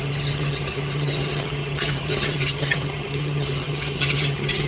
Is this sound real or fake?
fake